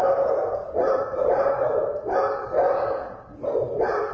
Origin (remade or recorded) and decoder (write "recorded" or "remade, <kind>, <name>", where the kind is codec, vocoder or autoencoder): recorded